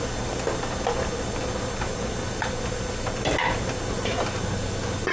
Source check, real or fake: real